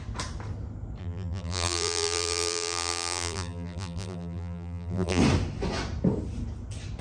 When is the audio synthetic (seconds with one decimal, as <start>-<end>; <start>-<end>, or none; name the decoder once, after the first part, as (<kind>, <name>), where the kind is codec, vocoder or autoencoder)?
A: 1.0-5.2 (vocoder, BigVGAN v2)